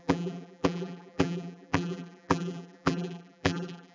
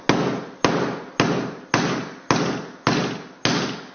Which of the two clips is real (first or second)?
second